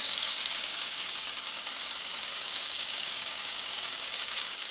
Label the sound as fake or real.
fake